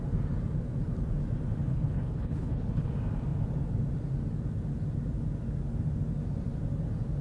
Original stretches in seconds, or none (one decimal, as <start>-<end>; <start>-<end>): 0.0-1.7; 2.9-7.2